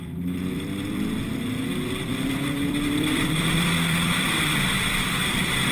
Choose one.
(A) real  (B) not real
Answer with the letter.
B